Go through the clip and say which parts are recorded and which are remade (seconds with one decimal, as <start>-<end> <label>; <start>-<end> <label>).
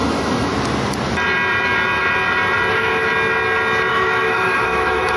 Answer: 0.0-0.5 remade; 0.5-2.7 recorded; 2.7-3.1 remade; 3.1-3.9 recorded; 3.9-5.2 remade